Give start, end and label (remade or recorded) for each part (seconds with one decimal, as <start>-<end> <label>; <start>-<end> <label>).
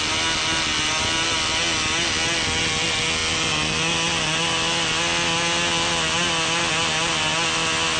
0.0-8.0 recorded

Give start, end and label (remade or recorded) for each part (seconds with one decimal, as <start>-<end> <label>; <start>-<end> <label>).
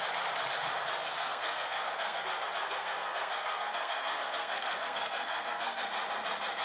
0.0-1.0 recorded; 1.0-2.2 remade; 2.2-2.6 recorded; 2.6-5.8 remade; 5.8-6.6 recorded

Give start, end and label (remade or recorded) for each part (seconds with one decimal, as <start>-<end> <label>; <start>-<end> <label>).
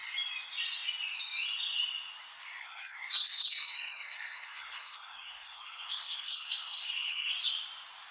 0.0-2.4 recorded; 2.4-7.3 remade; 7.3-8.1 recorded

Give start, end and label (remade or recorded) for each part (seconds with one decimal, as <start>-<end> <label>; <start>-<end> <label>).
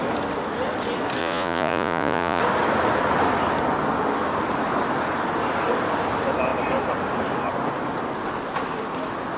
0.0-1.2 recorded; 1.2-2.4 remade; 2.4-9.4 recorded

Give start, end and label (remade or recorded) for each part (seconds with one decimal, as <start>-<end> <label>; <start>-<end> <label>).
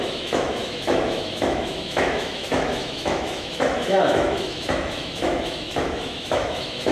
0.0-6.9 remade